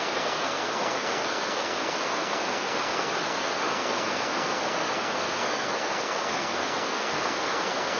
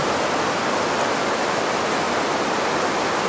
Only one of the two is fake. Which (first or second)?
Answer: first